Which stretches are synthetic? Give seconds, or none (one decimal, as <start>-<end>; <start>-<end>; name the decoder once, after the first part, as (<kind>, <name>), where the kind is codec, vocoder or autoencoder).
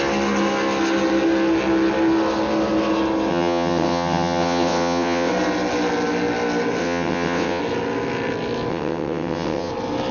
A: 3.3-5.3 (vocoder, WaveNeXt); 6.8-7.6; 8.7-9.7